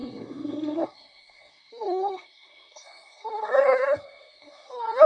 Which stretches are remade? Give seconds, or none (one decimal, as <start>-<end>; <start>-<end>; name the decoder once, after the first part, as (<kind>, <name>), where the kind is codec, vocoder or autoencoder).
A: 0.0-5.1 (codec, SNAC)